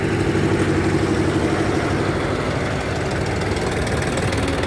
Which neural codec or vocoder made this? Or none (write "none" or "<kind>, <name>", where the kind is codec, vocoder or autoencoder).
none